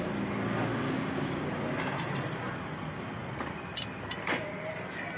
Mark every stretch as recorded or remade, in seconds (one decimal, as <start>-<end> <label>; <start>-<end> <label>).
0.0-0.7 recorded; 0.7-1.5 remade; 1.5-5.2 recorded